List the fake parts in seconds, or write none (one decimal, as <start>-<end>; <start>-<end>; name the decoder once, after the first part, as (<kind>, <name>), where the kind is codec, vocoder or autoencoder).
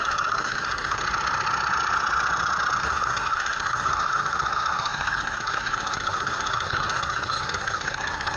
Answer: 0.0-1.0 (codec, SNAC); 2.8-8.4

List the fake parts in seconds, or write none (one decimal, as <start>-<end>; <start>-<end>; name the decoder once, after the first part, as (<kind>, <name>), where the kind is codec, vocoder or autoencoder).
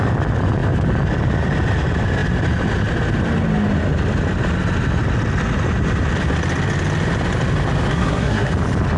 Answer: 7.9-8.5 (codec, SNAC)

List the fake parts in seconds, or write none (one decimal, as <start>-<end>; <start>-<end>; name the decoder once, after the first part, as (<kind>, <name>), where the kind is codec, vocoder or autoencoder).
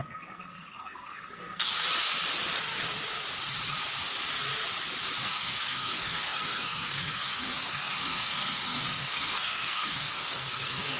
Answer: 0.0-1.7 (codec, SNAC); 5.2-11.0